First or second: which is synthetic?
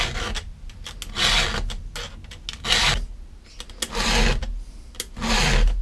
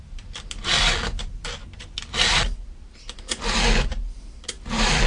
second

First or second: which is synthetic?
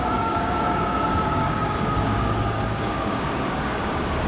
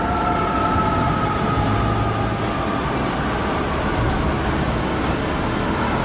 first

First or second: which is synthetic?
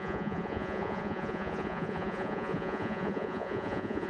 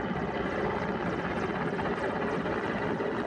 first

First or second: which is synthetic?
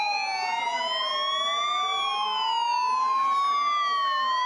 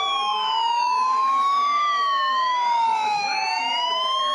second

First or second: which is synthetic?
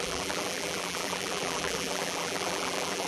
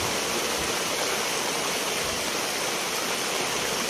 first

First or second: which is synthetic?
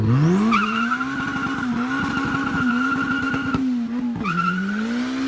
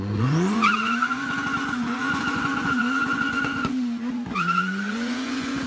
second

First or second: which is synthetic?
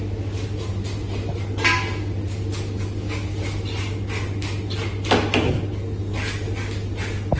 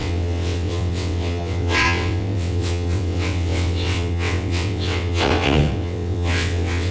second